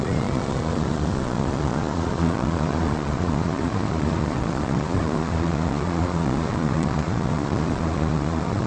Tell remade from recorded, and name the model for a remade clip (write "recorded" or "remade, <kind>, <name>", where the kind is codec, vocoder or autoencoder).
remade, vocoder, Vocos